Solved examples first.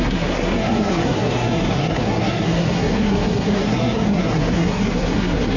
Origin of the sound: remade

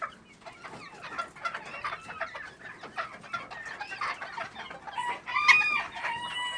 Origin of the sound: recorded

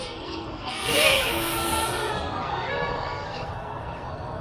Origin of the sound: remade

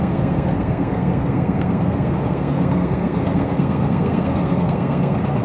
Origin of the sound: remade